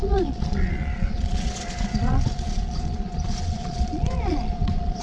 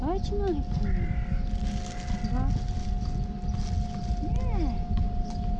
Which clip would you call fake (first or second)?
first